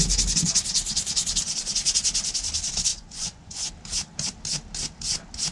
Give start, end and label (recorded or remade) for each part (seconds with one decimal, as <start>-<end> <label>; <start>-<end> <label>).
0.0-2.9 recorded; 2.9-3.7 remade; 3.7-5.5 recorded